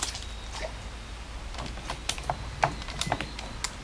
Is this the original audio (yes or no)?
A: yes